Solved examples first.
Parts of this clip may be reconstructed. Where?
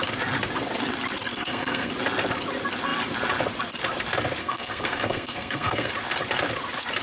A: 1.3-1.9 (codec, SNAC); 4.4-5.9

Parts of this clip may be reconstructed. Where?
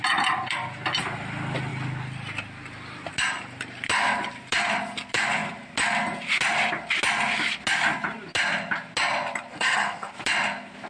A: 9.5-10.1 (codec, SNAC)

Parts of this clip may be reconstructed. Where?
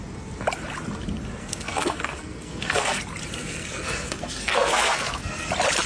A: 1.4-3.0 (codec, SNAC); 3.4-5.5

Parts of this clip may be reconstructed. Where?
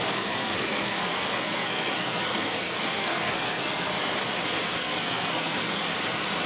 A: 0.0-3.9 (codec, SNAC); 4.8-5.8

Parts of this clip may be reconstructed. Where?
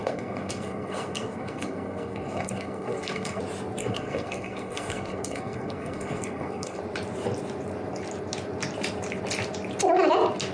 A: 0.0-3.4 (codec, SNAC); 3.8-6.8